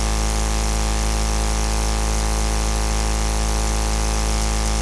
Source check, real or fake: real